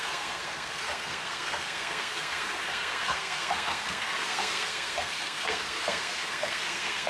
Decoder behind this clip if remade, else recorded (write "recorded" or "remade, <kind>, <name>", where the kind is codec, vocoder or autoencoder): remade, codec, SNAC